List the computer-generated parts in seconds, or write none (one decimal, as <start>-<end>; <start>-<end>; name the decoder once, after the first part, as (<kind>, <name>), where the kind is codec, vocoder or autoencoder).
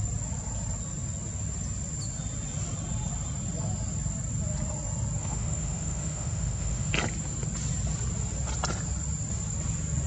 5.2-6.9 (autoencoder, DAC-VAE)